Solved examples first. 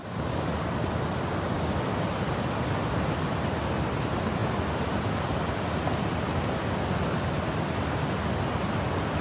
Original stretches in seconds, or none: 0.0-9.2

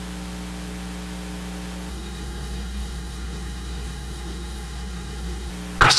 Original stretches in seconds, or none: 0.0-1.9; 5.5-6.0

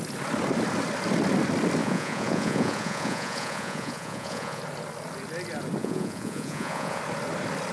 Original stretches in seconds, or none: 0.0-1.8; 4.6-5.8; 7.0-7.7